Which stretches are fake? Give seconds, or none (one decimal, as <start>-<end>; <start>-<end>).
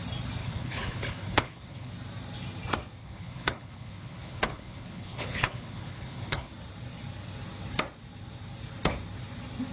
0.4-1.9; 3.0-6.5